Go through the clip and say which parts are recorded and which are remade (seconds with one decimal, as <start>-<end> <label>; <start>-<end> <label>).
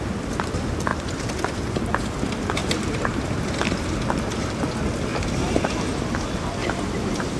0.0-2.6 recorded; 2.6-3.4 remade; 3.4-5.1 recorded; 5.1-6.0 remade; 6.0-6.6 recorded; 6.6-7.4 remade